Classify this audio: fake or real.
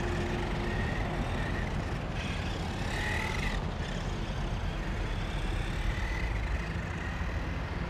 real